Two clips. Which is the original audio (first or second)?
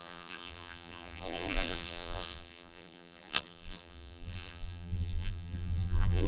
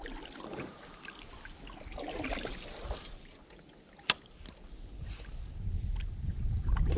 second